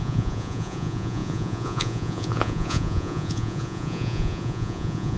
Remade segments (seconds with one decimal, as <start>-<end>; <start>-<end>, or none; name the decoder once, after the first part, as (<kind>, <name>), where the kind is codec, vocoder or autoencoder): 0.0-5.2 (vocoder, Vocos)